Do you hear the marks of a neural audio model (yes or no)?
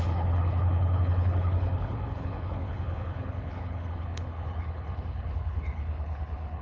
yes